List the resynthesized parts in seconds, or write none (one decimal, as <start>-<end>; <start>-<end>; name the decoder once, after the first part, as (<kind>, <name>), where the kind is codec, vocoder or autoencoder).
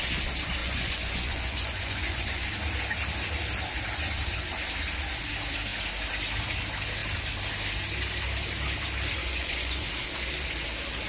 0.6-2.5 (vocoder, Vocos); 9.2-9.9